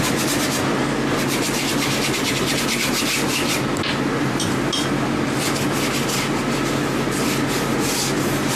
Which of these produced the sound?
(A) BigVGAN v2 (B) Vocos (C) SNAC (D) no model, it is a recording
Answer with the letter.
D